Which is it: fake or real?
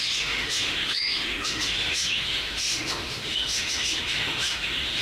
fake